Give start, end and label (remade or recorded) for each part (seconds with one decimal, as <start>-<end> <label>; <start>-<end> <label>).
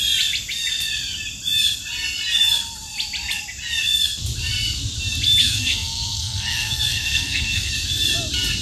0.0-5.4 recorded; 5.4-7.7 remade; 7.7-8.6 recorded